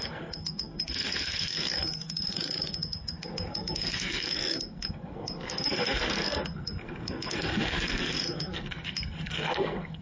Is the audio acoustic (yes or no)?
no